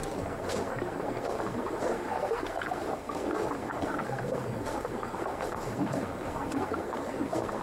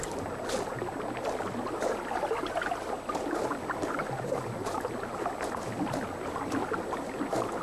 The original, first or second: second